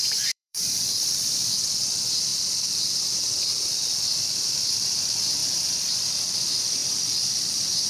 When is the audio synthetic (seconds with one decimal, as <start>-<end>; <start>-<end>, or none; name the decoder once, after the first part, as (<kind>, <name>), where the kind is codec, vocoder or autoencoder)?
0.0-2.3 (vocoder, BigVGAN v2); 4.7-7.9